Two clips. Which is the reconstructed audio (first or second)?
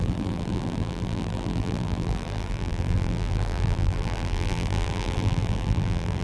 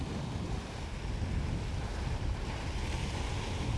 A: first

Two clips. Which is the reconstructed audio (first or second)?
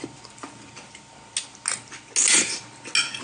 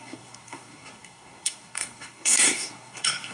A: second